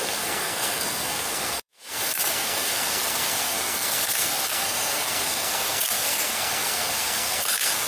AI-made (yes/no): yes